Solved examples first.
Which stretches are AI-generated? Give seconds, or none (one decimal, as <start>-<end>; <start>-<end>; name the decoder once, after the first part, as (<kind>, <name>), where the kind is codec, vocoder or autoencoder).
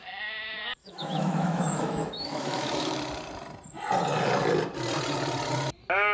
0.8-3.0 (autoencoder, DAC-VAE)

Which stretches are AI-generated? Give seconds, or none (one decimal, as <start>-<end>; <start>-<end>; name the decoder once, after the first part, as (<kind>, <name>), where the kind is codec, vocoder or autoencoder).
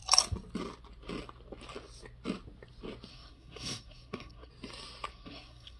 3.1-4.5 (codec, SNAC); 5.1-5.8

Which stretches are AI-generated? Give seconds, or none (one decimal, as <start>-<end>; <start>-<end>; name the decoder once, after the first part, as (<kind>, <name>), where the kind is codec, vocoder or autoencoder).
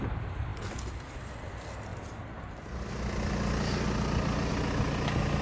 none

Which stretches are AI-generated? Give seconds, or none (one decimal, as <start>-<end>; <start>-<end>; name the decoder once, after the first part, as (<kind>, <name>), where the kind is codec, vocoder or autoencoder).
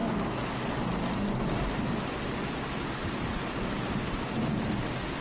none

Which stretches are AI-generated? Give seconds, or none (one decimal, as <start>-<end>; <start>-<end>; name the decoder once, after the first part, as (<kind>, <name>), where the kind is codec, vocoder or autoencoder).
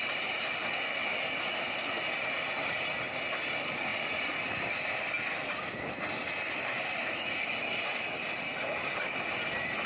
none